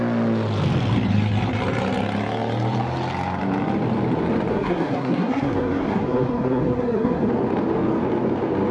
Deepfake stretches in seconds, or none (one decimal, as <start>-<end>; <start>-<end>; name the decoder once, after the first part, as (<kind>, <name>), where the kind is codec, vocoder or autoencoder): 4.5-7.3 (codec, SNAC)